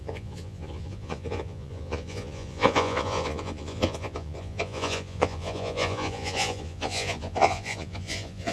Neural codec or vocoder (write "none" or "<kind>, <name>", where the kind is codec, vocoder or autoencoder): vocoder, Vocos